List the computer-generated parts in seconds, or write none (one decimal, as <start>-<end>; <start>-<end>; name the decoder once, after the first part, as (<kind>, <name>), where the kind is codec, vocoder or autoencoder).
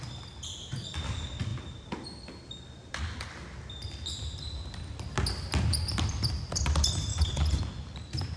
7.1-7.6 (vocoder, Vocos)